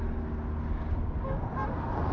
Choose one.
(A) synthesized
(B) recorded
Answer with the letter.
B